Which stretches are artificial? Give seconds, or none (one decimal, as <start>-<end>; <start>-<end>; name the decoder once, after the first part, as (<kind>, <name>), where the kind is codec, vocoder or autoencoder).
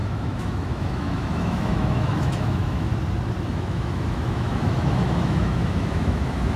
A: 0.0-2.9 (autoencoder, DAC-VAE); 3.5-6.6